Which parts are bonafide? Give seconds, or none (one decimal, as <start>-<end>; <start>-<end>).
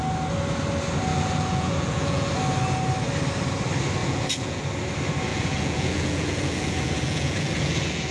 0.0-1.1; 2.3-4.0; 4.6-5.3